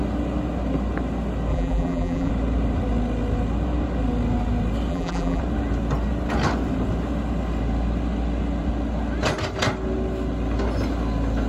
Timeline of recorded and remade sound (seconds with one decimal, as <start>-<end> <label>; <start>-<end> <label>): 0.0-1.5 recorded; 1.5-2.3 remade; 2.3-4.9 recorded; 4.9-5.4 remade; 5.4-11.5 recorded